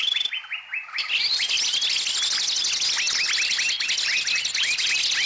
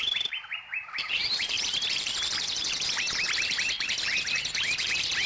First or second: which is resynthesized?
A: second